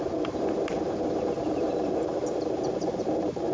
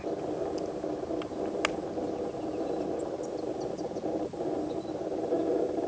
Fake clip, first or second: first